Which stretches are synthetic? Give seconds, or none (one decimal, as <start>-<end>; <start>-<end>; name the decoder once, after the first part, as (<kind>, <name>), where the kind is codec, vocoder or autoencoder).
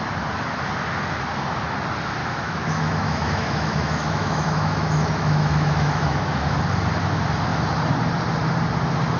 2.2-6.6 (autoencoder, DAC-VAE)